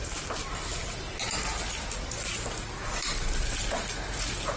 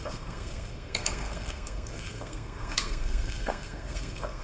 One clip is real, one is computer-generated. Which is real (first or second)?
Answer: first